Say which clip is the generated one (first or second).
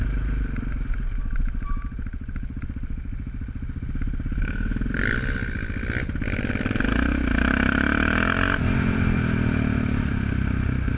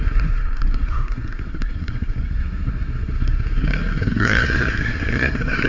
second